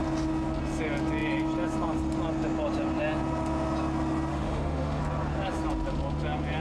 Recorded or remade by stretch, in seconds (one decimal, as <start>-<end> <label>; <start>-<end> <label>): 0.0-4.3 recorded; 4.3-5.0 remade; 5.0-6.6 recorded